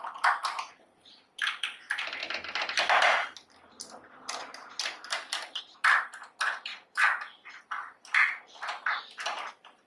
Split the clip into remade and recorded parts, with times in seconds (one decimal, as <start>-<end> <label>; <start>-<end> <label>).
0.0-6.7 recorded; 6.7-7.6 remade; 7.6-9.9 recorded